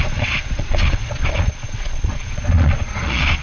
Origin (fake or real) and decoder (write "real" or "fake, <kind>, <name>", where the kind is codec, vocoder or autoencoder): fake, vocoder, Vocos